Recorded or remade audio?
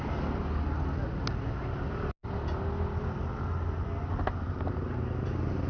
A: recorded